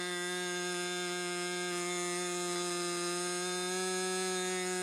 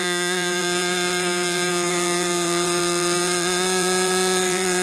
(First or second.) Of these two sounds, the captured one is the first